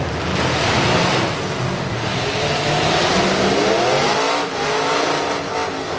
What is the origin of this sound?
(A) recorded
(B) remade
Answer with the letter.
A